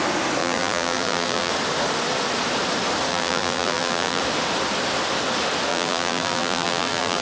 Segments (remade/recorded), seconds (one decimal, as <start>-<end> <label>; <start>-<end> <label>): 0.0-0.4 recorded; 0.4-1.5 remade; 1.5-3.1 recorded; 3.1-4.2 remade; 4.2-5.7 recorded; 5.7-7.2 remade